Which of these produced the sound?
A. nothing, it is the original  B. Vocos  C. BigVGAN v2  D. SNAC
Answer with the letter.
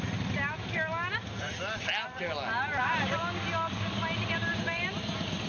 A